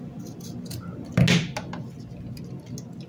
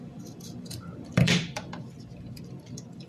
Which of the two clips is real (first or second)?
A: first